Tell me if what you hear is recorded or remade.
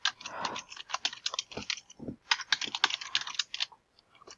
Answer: recorded